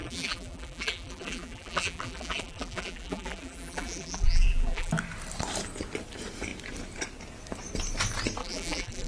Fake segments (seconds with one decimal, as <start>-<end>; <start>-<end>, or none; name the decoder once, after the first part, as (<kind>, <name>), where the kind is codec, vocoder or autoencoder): 0.0-4.9 (vocoder, BigVGAN v2); 8.4-9.1